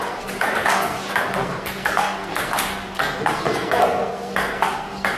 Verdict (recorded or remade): remade